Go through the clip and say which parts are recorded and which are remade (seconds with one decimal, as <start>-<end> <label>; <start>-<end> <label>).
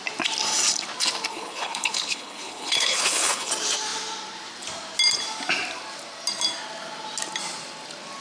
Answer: 0.0-1.3 recorded; 1.3-3.5 remade; 3.5-8.2 recorded